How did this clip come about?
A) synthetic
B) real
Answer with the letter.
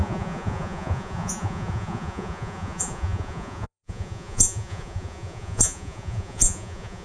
A